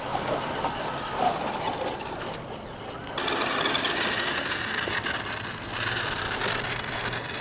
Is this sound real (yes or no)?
yes